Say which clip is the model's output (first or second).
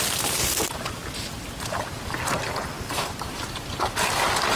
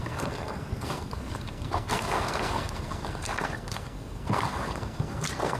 second